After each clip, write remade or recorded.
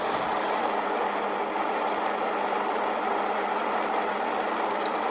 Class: recorded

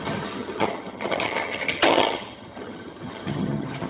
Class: remade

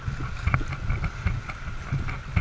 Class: recorded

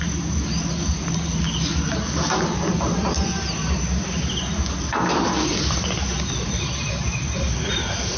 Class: recorded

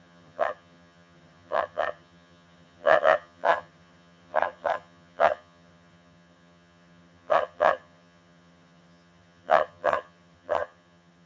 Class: remade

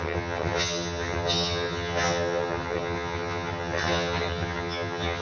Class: remade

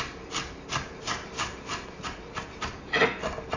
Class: recorded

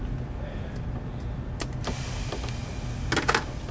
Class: recorded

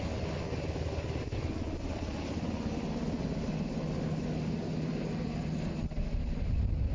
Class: recorded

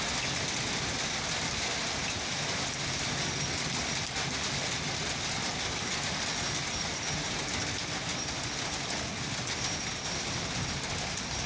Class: recorded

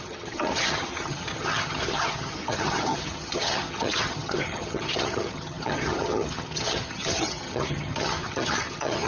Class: remade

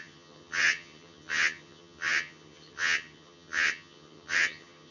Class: remade